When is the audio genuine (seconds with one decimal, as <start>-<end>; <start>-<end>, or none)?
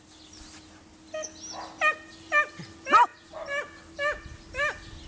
0.0-5.1